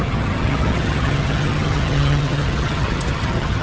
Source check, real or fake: fake